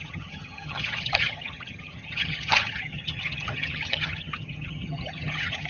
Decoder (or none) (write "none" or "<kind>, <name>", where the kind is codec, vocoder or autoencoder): vocoder, HiFi-GAN